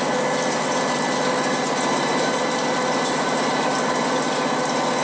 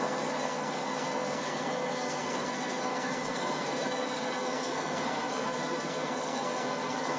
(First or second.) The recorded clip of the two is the first